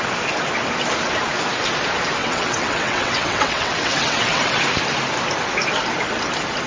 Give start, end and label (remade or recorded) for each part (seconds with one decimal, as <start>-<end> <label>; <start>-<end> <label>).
0.0-2.2 recorded; 2.2-4.6 remade; 4.6-6.7 recorded